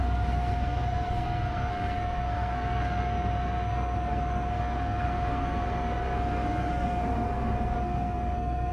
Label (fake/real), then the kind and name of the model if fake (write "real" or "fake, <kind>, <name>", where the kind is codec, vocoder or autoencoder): fake, codec, SNAC